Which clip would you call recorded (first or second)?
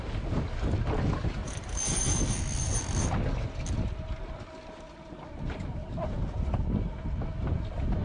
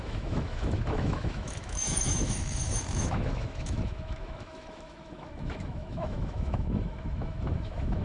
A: first